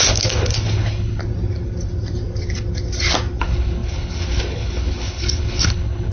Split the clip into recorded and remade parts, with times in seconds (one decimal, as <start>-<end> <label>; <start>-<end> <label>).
0.0-1.2 remade; 1.2-3.4 recorded; 3.4-6.1 remade